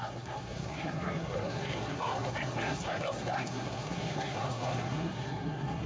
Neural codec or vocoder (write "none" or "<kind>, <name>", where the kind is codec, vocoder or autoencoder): codec, SNAC